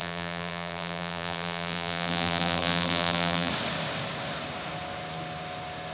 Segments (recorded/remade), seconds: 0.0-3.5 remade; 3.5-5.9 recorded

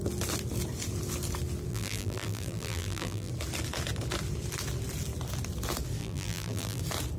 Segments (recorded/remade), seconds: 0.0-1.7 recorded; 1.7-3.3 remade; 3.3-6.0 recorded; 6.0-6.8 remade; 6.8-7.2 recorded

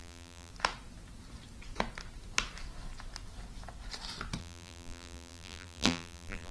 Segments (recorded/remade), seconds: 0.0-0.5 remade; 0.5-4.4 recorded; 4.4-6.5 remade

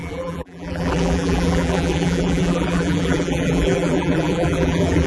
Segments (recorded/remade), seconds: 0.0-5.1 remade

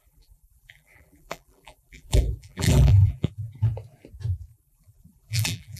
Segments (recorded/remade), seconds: 0.0-3.5 remade; 3.5-4.5 recorded; 4.5-5.8 remade

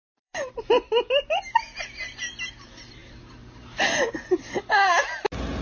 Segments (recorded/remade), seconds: 0.0-0.6 remade; 0.6-5.6 recorded

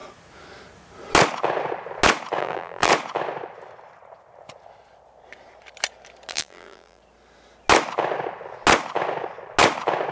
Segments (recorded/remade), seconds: 0.0-2.4 recorded; 2.4-2.9 remade; 2.9-6.3 recorded; 6.3-7.0 remade; 7.0-10.1 recorded

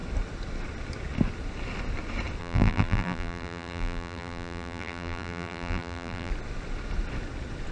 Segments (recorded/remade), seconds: 0.0-2.4 recorded; 2.4-6.3 remade; 6.3-7.7 recorded